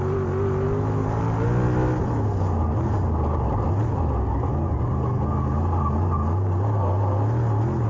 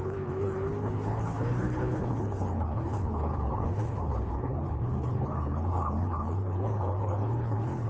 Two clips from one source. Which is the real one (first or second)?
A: first